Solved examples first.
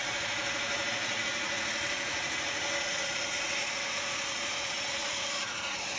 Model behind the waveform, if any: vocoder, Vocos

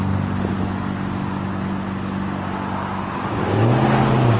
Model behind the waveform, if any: none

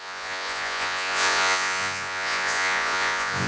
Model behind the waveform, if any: vocoder, Vocos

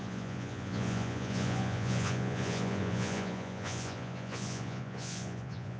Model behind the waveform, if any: vocoder, Vocos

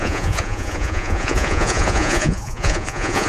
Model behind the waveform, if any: vocoder, Vocos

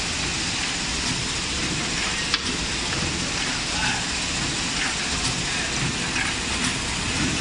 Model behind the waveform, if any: none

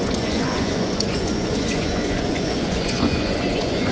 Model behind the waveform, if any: vocoder, Vocos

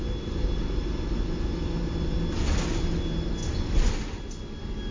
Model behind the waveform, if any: none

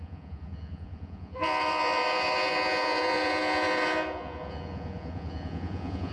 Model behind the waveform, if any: vocoder, Vocos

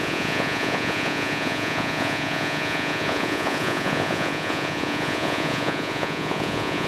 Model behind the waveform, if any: vocoder, Vocos